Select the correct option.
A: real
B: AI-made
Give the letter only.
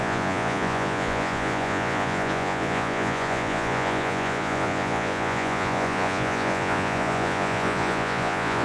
B